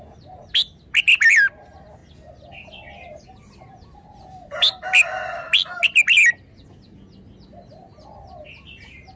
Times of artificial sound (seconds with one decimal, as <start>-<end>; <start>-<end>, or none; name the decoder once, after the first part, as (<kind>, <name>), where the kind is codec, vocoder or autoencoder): none